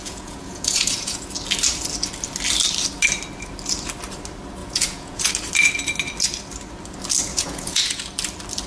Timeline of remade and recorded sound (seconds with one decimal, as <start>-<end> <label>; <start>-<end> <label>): 0.0-1.3 remade; 1.3-4.6 recorded; 4.6-5.3 remade; 5.3-7.3 recorded; 7.3-8.0 remade; 8.0-8.7 recorded